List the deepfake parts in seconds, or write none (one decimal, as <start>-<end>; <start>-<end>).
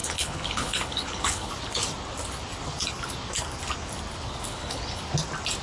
0.0-1.5; 4.5-5.0